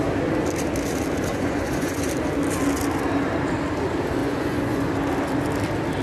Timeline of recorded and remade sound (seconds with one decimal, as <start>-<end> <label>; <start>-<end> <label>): 0.0-1.3 recorded; 1.3-2.0 remade; 2.0-4.2 recorded; 4.2-4.9 remade; 4.9-6.0 recorded

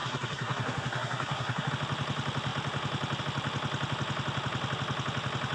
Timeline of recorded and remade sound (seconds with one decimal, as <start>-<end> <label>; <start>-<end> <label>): 0.0-1.7 remade; 1.7-5.5 recorded

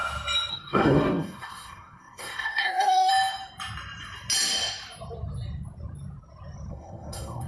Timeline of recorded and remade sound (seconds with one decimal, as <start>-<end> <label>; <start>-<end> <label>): 0.0-0.5 recorded; 0.5-3.1 remade; 3.1-6.7 recorded; 6.7-7.5 remade

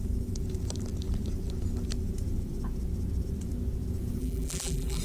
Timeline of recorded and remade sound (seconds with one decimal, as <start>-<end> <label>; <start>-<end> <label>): 0.0-4.2 recorded; 4.2-5.0 remade

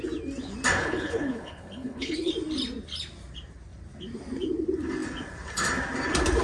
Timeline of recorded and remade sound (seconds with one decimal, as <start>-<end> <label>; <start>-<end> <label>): 0.0-0.8 recorded; 0.8-2.3 remade; 2.3-6.4 recorded